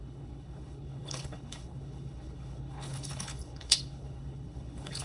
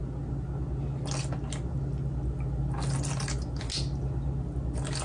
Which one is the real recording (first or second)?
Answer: second